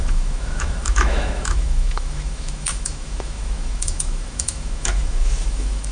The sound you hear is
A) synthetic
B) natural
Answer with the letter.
A